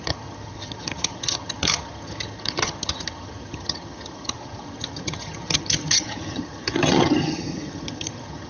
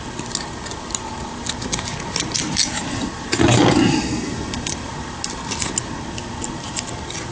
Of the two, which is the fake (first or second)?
first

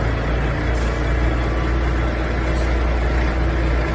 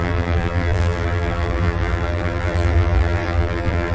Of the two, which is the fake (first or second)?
second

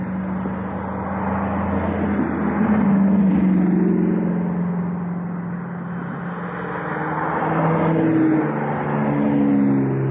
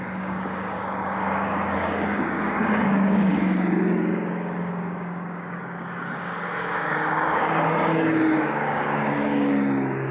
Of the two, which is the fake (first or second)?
second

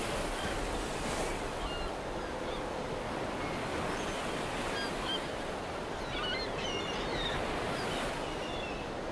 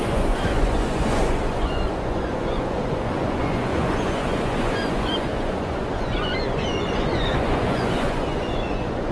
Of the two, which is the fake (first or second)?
second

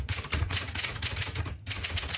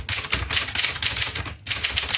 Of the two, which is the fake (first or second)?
first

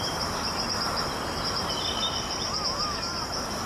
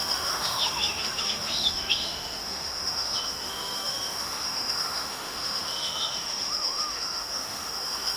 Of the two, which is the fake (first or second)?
second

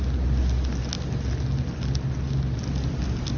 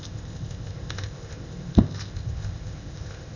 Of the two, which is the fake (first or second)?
second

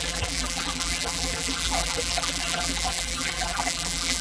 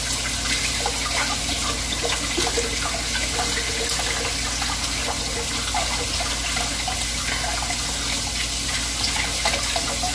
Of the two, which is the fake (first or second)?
first